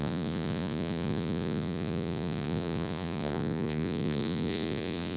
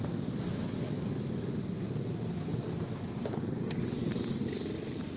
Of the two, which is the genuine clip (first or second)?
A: second